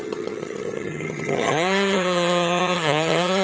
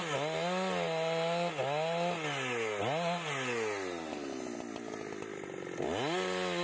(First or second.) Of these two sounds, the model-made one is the first